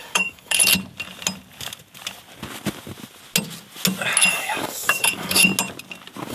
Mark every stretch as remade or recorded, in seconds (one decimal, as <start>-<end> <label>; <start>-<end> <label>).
0.0-0.6 remade; 0.6-4.3 recorded; 4.3-5.5 remade; 5.5-6.3 recorded